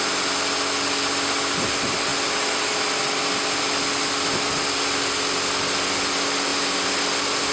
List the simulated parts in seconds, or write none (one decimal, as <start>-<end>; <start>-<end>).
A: none